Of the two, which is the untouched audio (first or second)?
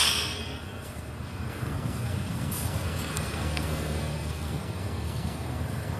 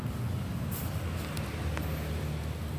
second